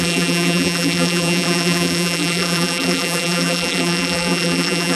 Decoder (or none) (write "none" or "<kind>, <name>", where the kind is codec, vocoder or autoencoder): vocoder, BigVGAN v2